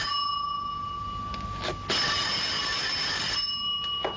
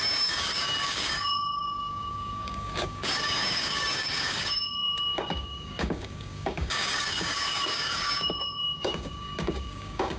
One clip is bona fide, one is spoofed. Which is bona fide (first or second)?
first